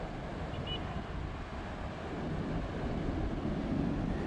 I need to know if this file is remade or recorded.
recorded